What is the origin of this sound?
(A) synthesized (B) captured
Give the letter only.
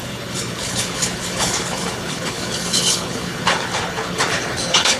A